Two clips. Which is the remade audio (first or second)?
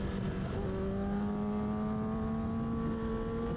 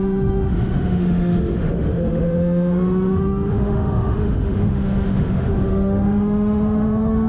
second